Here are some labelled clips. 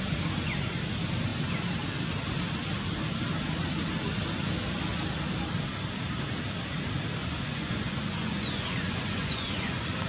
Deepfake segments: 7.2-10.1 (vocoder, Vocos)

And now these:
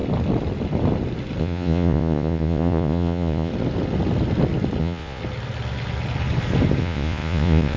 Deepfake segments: 1.4-3.5 (vocoder, Vocos); 4.8-5.2; 6.8-7.8

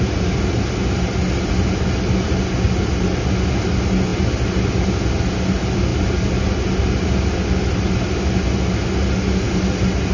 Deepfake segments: none

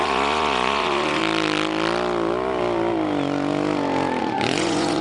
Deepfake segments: 0.0-1.2 (vocoder, Vocos); 4.2-5.0

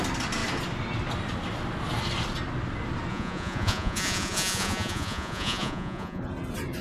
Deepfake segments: 3.1-6.2 (vocoder, Vocos)

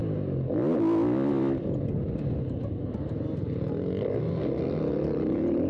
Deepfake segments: none

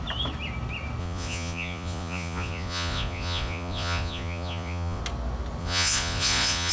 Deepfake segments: 1.0-5.0 (vocoder, Vocos); 5.6-6.7